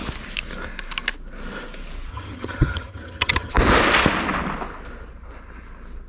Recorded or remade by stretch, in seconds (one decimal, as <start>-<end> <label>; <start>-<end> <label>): 0.0-2.1 recorded; 2.1-3.5 remade; 3.5-6.1 recorded